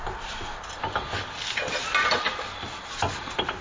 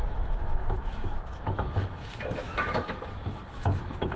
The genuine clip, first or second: first